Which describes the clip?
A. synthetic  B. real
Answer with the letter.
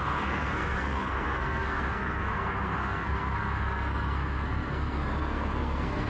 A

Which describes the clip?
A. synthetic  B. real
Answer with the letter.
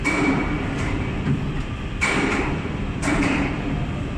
A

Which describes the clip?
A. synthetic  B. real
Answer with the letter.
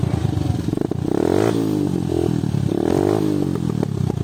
B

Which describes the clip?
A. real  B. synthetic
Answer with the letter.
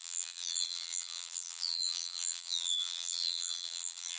B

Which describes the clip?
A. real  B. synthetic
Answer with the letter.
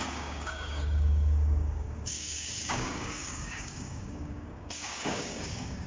B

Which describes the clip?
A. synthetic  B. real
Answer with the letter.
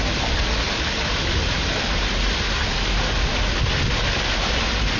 B